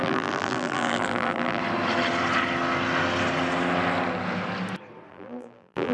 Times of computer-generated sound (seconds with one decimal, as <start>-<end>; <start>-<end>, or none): 0.0-1.6; 5.1-5.9